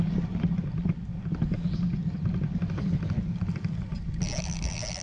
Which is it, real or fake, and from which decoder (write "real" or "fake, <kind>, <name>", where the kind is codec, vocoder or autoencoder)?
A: real